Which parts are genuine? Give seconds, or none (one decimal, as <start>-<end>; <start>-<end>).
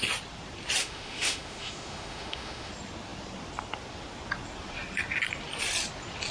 0.0-0.8; 2.7-6.3